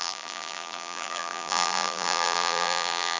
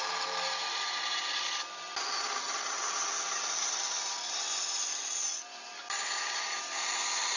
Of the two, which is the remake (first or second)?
first